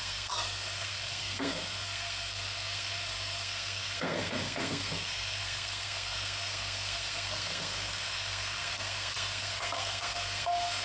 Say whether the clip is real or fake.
fake